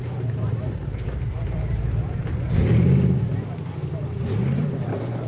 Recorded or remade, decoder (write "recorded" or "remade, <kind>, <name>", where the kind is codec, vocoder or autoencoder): remade, vocoder, BigVGAN v2